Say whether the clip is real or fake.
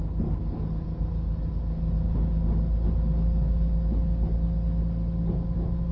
real